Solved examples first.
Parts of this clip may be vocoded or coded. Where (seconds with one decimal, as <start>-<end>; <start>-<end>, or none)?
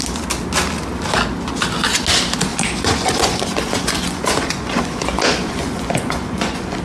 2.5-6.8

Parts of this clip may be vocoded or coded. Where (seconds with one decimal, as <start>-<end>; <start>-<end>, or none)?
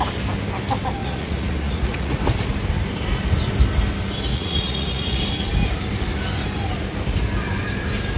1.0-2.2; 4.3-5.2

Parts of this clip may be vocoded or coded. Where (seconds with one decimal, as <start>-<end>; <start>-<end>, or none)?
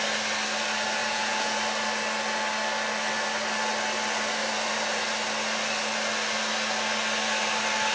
1.0-1.6